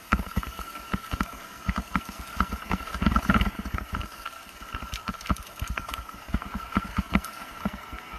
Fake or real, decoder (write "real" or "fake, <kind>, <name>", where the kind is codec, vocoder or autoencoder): fake, codec, SNAC